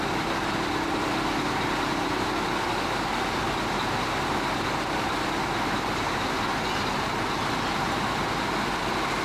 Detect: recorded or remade recorded